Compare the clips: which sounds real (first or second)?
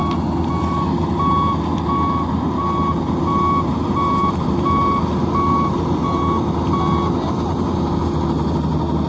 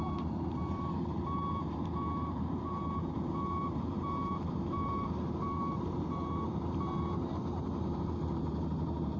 first